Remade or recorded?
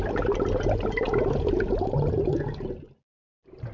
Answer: recorded